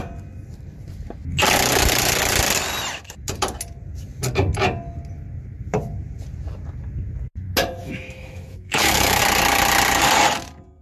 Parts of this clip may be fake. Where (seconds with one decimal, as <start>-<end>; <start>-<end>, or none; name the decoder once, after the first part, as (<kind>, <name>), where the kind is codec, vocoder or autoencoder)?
7.8-9.2 (autoencoder, DAC-VAE)